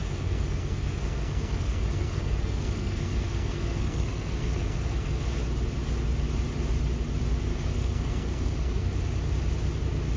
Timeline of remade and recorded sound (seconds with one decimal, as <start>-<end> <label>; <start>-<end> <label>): 0.0-5.2 remade; 5.2-7.5 recorded; 7.5-8.9 remade; 8.9-10.2 recorded